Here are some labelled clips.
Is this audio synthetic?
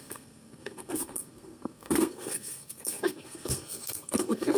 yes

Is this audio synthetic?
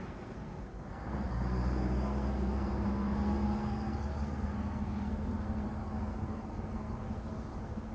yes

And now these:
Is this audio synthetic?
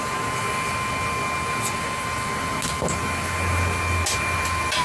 no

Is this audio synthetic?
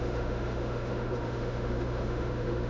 yes